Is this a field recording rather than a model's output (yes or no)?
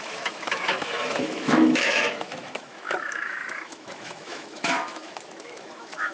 no